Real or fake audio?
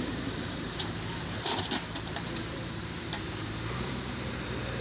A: fake